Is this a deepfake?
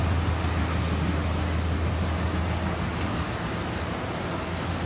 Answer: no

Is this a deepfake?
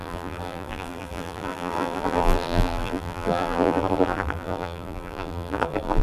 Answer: yes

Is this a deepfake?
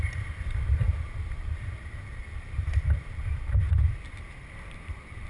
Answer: yes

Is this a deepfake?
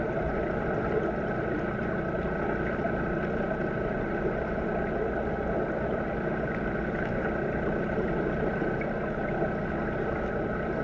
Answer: no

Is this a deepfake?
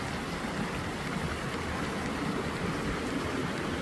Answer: no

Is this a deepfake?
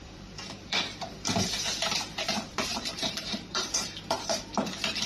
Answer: yes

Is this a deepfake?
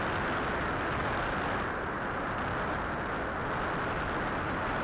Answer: no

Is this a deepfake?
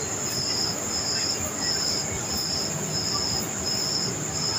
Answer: no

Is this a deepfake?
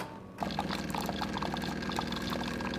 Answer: no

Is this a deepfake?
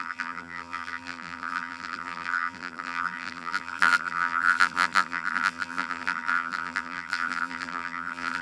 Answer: yes